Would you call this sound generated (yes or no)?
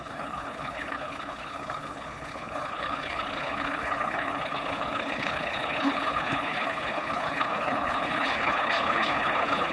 yes